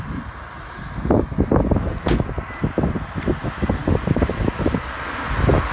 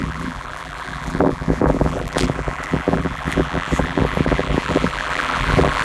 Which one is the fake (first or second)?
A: second